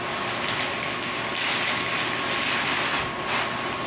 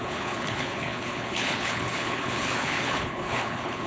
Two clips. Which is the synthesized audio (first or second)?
second